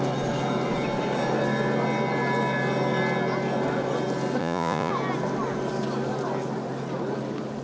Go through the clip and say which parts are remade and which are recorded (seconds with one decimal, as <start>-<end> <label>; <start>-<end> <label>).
0.0-4.4 recorded; 4.4-4.9 remade; 4.9-7.6 recorded